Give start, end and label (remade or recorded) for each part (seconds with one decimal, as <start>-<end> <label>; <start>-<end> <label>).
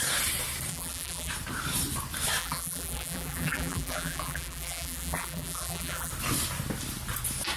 0.0-0.7 recorded; 0.7-1.3 remade; 1.3-2.4 recorded; 2.4-6.1 remade; 6.1-7.6 recorded